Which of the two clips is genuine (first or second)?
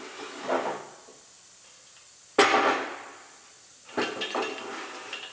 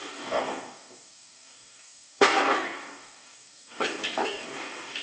first